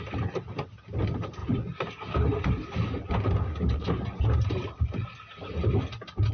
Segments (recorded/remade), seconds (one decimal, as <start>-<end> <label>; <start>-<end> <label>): 0.0-6.3 recorded